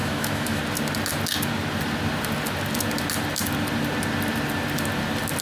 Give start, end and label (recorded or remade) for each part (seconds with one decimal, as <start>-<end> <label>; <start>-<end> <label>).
0.0-0.6 remade; 0.6-5.4 recorded